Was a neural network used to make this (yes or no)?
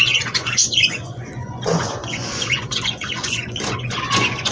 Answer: yes